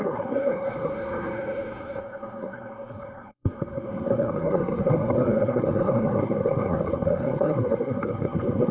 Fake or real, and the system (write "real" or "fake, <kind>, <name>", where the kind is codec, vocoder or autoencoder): fake, codec, SNAC